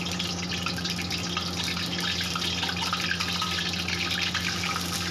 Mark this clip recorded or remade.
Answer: recorded